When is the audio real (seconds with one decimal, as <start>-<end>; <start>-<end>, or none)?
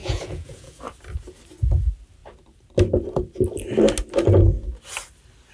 0.8-5.5